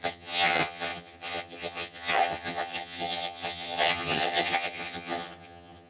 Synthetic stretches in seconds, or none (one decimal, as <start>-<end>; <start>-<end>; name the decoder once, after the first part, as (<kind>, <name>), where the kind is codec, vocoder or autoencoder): 0.0-5.9 (vocoder, HiFi-GAN)